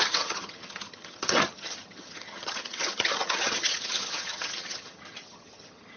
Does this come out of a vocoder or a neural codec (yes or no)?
yes